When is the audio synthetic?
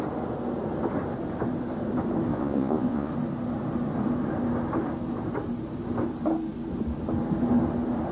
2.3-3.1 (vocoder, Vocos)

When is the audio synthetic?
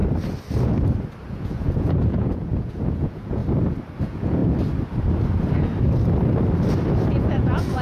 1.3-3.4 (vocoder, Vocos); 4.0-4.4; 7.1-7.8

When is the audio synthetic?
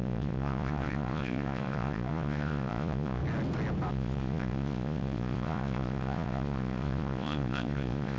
0.0-3.2 (vocoder, Vocos); 3.9-8.2